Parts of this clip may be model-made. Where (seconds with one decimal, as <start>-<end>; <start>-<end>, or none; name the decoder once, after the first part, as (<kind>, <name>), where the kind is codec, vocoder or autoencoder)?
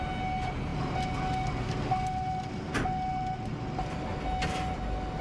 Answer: none